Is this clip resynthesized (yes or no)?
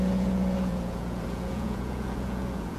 yes